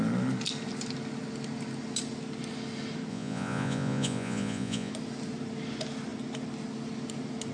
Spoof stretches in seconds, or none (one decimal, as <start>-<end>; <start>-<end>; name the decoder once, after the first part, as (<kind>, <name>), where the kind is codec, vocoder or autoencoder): 3.1-4.9 (vocoder, Vocos)

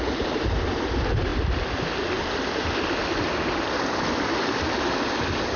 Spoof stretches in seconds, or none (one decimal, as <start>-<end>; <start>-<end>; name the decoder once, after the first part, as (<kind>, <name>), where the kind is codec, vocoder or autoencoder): none